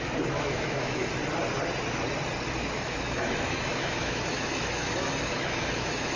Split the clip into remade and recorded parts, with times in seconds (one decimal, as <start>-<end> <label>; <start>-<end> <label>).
0.0-1.2 remade; 1.2-2.6 recorded; 2.6-6.2 remade